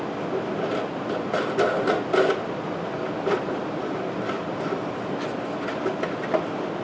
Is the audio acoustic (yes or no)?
yes